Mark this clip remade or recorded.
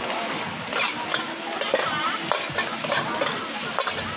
recorded